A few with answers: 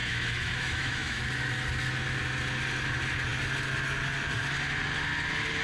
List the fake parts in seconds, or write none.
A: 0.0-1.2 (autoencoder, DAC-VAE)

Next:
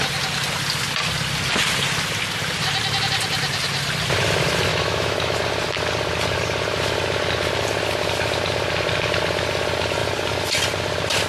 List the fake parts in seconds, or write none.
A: 4.7-5.4 (autoencoder, DAC-VAE)